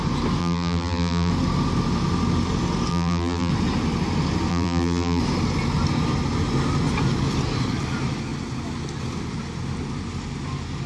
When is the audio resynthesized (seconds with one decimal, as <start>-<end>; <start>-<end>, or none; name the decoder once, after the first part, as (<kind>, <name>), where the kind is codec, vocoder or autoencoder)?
0.4-1.3 (vocoder, BigVGAN v2); 2.9-3.5; 4.5-5.2